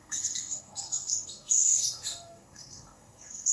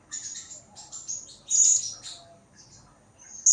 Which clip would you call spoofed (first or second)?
first